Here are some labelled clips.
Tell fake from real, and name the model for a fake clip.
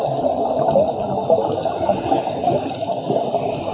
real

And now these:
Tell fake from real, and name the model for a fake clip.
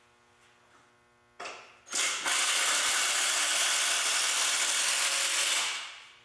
real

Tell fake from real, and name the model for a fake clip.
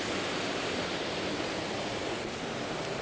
real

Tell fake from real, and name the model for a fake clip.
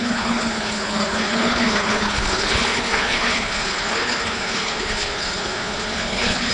fake, codec, HILCodec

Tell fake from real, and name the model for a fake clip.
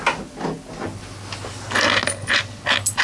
real